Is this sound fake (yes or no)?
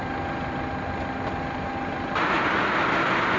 no